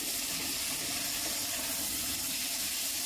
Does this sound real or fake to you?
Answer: real